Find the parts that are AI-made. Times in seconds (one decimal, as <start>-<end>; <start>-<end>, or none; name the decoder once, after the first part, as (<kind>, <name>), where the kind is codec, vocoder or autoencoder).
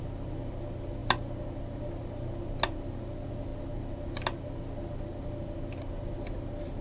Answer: none